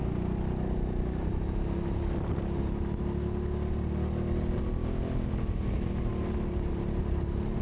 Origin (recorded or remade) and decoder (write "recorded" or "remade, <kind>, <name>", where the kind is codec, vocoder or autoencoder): recorded